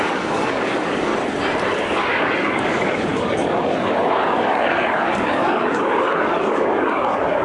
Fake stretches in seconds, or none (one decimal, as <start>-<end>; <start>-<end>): 0.0-1.1; 1.8-7.4